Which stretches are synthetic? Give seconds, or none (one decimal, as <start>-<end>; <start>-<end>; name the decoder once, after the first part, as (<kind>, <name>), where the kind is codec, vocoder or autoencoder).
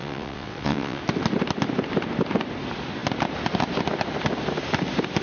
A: 0.0-1.0 (vocoder, WaveNeXt)